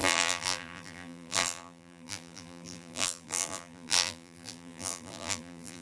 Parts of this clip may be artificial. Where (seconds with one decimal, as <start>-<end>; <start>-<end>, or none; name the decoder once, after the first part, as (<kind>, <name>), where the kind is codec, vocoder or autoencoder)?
0.0-5.8 (vocoder, BigVGAN v2)